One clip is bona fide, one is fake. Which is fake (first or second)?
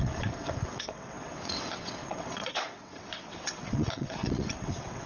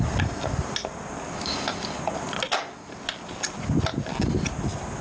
first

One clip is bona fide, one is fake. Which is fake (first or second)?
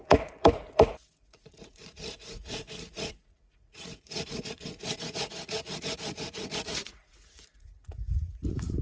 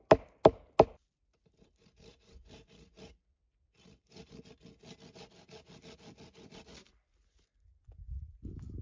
first